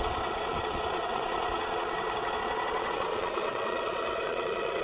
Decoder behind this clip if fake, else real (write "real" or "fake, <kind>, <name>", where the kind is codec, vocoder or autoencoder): fake, vocoder, Vocos